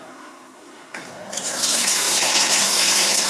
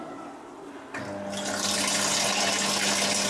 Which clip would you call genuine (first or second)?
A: second